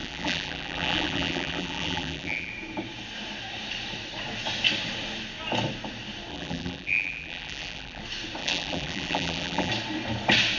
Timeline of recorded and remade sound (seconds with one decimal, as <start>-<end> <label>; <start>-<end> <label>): 0.0-2.5 remade; 2.5-6.3 recorded; 6.3-8.0 remade; 8.0-8.4 recorded; 8.4-9.7 remade; 9.7-10.6 recorded